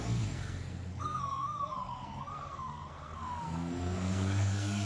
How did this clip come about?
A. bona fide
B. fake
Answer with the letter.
B